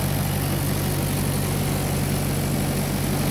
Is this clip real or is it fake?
real